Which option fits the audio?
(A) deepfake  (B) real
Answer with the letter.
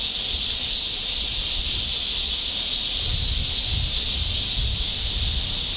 B